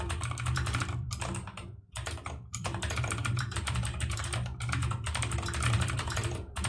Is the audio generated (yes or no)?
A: yes